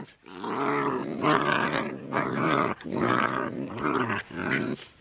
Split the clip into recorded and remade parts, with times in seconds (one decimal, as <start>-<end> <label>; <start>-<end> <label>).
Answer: 0.0-1.0 recorded; 1.0-4.0 remade; 4.0-4.4 recorded; 4.4-5.0 remade